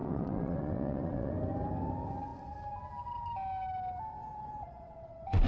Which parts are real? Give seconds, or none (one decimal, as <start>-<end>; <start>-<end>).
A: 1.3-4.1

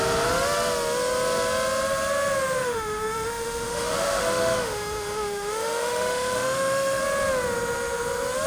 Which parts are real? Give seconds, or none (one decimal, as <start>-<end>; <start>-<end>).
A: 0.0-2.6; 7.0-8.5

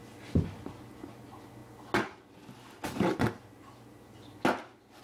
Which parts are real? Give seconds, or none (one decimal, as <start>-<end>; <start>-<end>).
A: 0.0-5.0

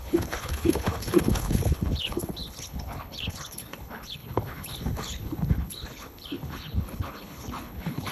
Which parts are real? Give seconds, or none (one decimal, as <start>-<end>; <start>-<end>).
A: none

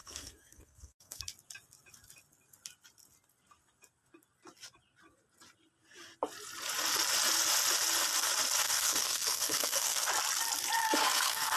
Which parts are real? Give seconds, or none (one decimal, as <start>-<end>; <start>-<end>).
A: 1.2-8.6; 10.0-10.8

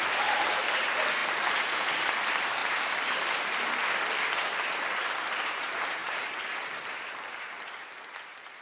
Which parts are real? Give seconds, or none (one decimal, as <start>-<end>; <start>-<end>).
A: 2.6-5.2